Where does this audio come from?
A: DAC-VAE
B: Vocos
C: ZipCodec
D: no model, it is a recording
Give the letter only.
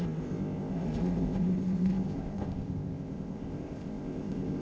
C